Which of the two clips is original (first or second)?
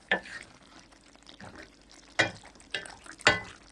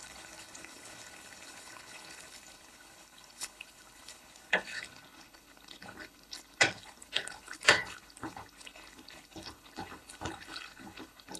first